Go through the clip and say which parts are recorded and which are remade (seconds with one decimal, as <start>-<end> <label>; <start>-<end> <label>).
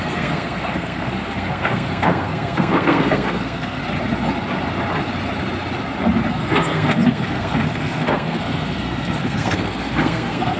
0.0-3.8 remade; 3.8-6.3 recorded; 6.3-10.6 remade